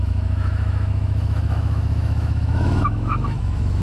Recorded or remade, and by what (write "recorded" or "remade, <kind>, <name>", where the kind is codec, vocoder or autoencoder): remade, autoencoder, DAC-VAE